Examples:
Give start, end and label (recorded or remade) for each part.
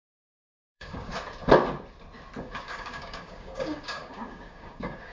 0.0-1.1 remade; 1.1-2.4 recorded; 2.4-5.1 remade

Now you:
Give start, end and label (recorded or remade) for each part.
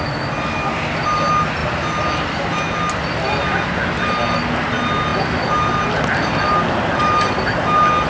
0.0-8.1 recorded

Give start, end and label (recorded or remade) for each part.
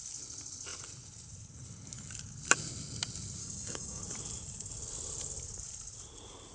0.0-3.4 recorded; 3.4-4.0 remade; 4.0-6.5 recorded